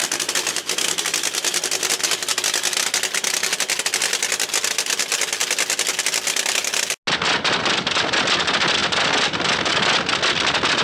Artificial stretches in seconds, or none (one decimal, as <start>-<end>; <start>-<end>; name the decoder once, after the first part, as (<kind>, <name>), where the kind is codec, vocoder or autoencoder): 0.0-1.9 (vocoder, BigVGAN v2); 8.8-9.7